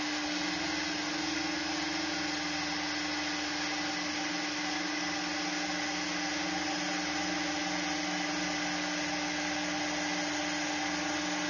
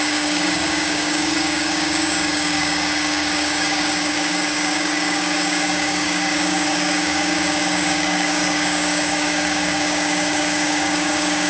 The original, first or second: first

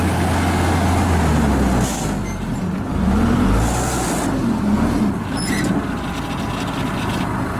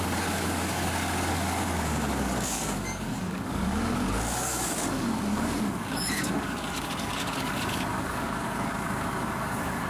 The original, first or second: first